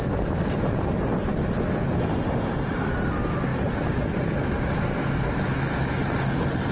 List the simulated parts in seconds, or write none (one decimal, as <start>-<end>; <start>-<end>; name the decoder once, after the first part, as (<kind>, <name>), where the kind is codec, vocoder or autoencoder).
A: 2.0-2.9 (autoencoder, DAC-VAE)